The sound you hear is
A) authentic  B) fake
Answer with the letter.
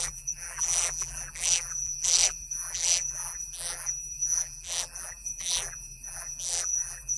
B